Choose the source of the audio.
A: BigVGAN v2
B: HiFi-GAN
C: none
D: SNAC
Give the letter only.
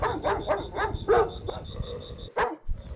C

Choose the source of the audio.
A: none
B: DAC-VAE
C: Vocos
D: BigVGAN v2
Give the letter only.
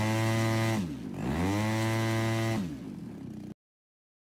A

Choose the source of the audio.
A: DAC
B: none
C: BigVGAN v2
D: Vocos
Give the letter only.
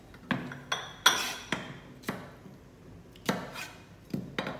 B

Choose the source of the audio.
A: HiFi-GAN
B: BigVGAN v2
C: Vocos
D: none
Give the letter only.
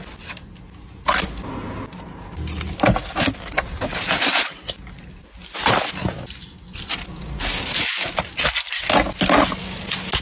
D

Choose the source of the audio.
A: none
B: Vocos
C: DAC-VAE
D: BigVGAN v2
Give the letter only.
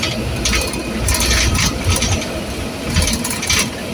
A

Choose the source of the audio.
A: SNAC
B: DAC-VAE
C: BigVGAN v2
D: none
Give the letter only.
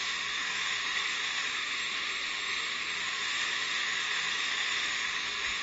B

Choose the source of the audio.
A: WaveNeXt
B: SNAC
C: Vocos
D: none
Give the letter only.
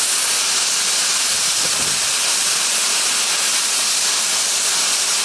D